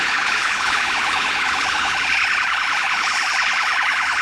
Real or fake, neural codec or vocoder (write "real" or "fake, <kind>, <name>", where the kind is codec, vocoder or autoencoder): fake, codec, HILCodec